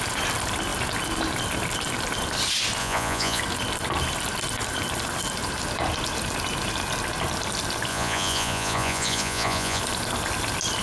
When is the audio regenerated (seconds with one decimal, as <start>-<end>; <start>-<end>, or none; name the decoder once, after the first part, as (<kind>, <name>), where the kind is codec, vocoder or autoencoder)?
2.8-3.4 (vocoder, Vocos); 7.9-9.8